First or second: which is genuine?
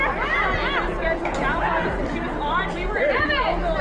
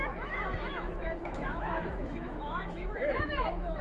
first